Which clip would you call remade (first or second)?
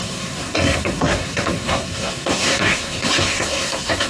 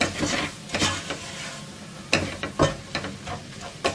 first